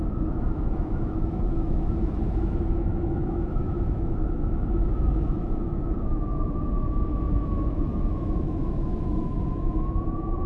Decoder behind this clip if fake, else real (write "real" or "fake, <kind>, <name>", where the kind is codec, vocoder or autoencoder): fake, autoencoder, DAC-VAE